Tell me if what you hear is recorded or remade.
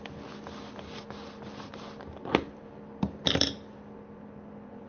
recorded